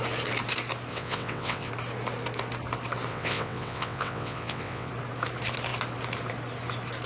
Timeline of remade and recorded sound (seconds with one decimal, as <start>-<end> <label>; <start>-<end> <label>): 0.0-0.9 recorded; 0.9-1.7 remade; 1.7-3.1 recorded; 3.1-4.9 remade; 4.9-7.1 recorded